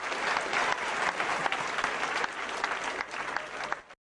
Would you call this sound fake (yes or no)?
no